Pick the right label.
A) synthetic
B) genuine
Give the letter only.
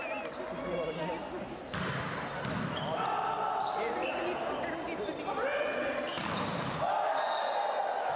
B